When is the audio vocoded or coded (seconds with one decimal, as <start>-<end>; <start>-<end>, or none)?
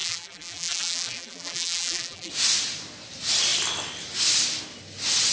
0.0-2.3